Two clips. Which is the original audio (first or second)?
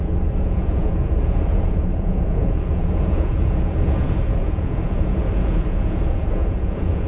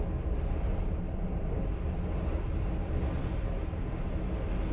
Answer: second